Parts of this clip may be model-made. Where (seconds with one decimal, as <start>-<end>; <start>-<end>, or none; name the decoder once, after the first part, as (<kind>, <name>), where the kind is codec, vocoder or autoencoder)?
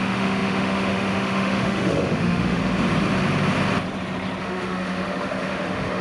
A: 0.0-2.6 (autoencoder, DAC-VAE); 4.4-6.0